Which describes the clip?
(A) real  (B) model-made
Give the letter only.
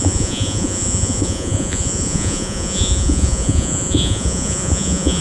B